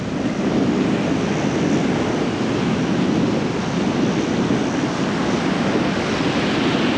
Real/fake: real